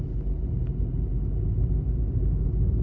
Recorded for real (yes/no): yes